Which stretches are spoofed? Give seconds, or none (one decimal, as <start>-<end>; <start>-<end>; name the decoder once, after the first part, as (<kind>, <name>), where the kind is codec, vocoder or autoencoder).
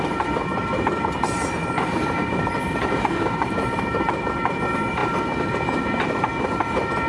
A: 1.6-4.6 (vocoder, BigVGAN v2)